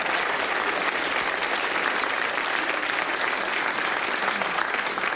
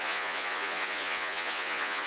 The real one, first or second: first